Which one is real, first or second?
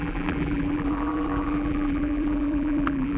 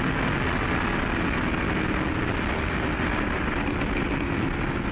second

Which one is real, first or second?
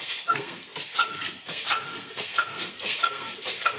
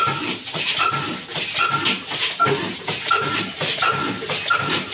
second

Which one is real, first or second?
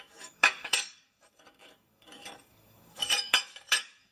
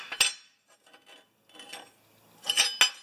second